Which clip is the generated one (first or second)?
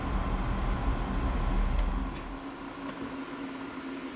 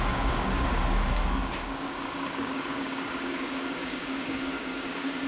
second